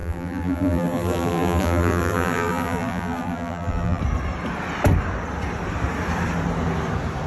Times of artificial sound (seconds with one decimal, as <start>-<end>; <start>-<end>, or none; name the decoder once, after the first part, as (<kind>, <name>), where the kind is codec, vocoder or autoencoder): 0.0-4.0 (vocoder, BigVGAN v2)